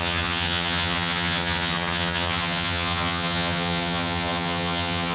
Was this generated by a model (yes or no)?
yes